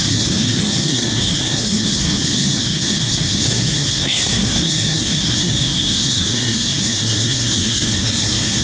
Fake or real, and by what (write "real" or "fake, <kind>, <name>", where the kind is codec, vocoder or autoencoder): fake, codec, SNAC